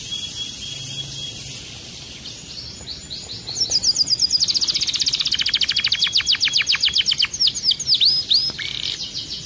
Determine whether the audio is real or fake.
real